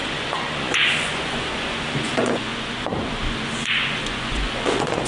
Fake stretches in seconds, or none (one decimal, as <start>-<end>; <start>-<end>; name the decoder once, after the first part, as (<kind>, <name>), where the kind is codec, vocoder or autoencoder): 0.0-5.1 (vocoder, Vocos)